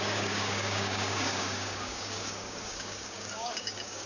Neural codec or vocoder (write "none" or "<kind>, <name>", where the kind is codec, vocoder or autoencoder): codec, DAC